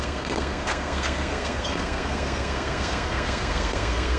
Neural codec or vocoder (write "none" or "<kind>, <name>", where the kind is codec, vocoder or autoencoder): codec, SNAC